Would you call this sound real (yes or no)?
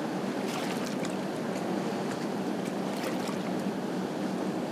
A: yes